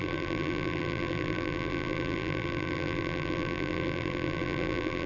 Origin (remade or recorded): remade